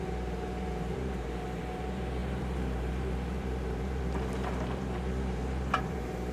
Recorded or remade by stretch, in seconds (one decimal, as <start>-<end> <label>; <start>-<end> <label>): 0.0-6.3 remade